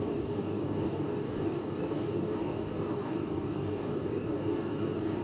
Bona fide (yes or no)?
no